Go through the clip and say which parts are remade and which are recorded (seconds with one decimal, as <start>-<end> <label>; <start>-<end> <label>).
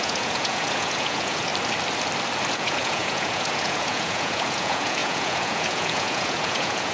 0.0-1.5 remade; 1.5-2.5 recorded; 2.5-6.9 remade